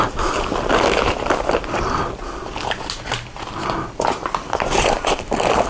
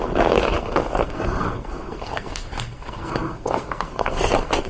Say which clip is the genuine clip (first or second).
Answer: first